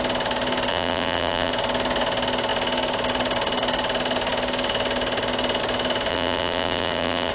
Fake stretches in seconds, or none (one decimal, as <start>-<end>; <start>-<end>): 0.7-1.5; 6.1-7.3

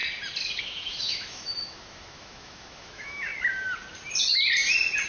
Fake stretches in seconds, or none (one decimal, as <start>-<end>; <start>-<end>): 0.6-3.3

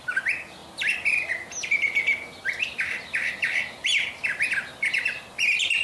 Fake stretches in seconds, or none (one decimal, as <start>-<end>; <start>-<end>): none

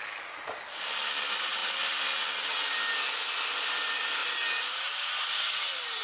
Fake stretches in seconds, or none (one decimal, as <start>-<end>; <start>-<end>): none

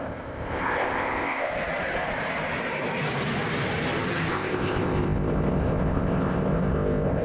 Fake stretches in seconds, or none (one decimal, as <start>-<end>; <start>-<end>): 0.0-1.5; 4.3-7.2

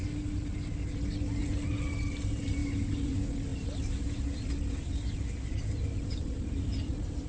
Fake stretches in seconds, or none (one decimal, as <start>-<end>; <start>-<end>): none

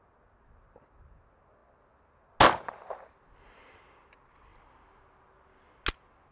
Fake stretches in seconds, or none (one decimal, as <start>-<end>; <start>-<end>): none